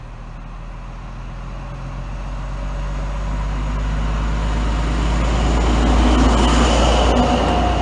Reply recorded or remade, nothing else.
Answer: recorded